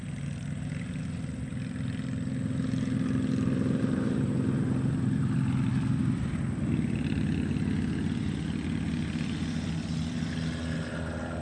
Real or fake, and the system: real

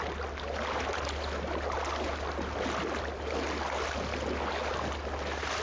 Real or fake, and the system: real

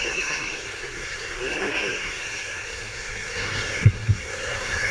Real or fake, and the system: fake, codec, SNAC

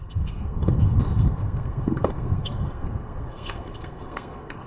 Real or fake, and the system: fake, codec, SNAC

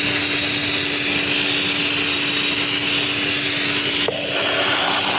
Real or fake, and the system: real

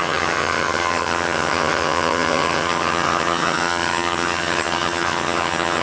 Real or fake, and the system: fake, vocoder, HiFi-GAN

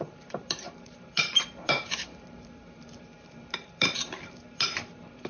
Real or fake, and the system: fake, vocoder, BigVGAN v2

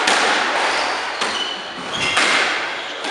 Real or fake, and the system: real